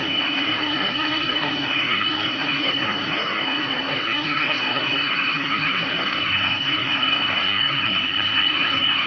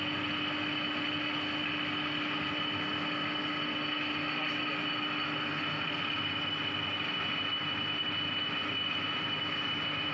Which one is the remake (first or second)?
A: first